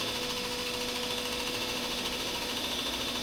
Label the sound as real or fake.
fake